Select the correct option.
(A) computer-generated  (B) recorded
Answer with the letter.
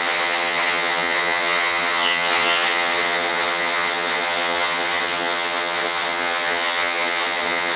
A